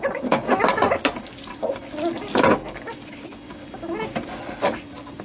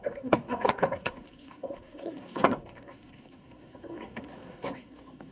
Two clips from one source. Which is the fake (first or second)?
second